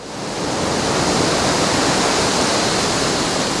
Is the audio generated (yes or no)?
no